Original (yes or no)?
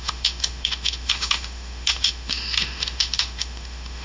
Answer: no